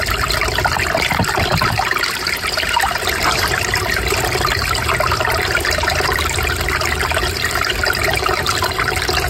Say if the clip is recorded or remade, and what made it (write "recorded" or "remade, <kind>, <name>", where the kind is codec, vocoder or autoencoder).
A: recorded